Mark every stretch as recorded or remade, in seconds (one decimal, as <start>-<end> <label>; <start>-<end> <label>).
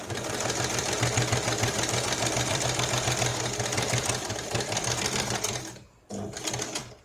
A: 0.0-3.3 remade; 3.3-6.4 recorded; 6.4-7.0 remade